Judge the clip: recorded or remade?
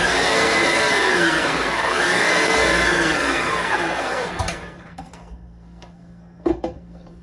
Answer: remade